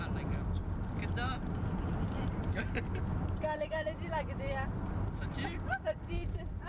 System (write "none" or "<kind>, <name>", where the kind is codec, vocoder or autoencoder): none